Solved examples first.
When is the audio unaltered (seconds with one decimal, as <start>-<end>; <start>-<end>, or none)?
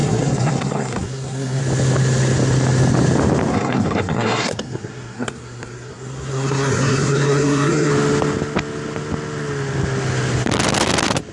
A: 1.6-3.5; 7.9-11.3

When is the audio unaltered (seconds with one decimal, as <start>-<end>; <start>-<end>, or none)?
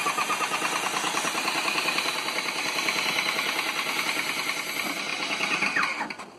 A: 0.0-6.4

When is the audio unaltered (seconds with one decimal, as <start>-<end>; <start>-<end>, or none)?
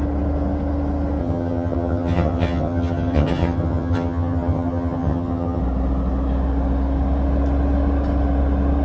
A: 0.0-1.2; 5.6-8.8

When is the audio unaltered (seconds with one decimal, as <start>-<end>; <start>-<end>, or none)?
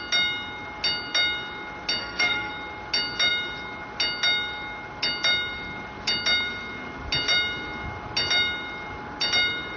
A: 0.0-2.0; 2.5-9.8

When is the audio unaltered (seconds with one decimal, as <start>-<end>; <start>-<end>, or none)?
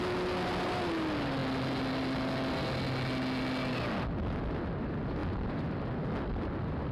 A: 0.0-6.9